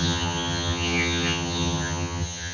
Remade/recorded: remade